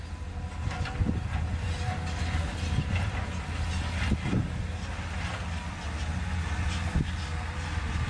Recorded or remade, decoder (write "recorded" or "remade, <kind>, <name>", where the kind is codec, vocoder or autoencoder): recorded